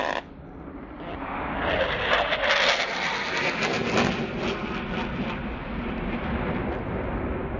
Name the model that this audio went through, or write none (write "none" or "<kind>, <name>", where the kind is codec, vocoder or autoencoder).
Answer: none